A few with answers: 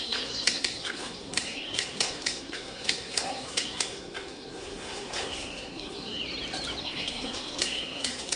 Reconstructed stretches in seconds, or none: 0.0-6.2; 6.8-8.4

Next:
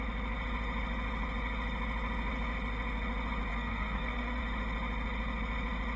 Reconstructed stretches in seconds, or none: 3.5-4.4

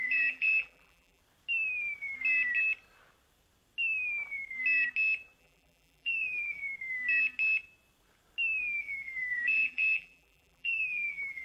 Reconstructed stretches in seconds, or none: 0.0-1.2; 5.4-6.6; 8.6-11.4

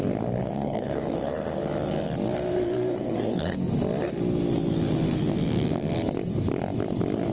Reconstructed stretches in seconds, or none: 0.4-1.6; 2.5-3.7